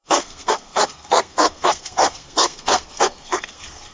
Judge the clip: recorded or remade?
remade